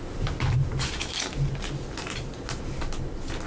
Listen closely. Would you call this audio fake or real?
real